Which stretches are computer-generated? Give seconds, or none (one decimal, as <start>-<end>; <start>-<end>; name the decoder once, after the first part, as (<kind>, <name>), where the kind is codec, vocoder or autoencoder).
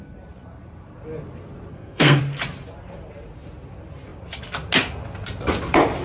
1.7-2.2 (codec, SNAC)